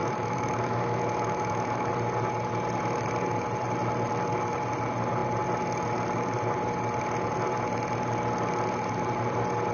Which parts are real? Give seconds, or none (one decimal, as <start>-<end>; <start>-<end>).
1.9-9.7